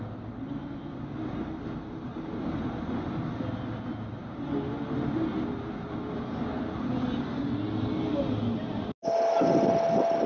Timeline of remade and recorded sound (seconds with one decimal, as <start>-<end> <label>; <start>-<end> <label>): 0.0-10.3 recorded